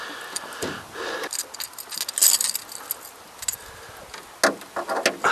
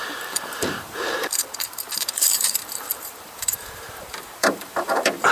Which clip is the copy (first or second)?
second